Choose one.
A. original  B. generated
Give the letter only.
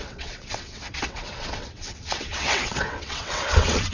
B